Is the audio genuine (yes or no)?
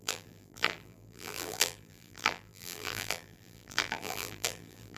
no